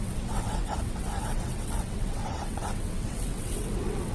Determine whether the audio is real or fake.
fake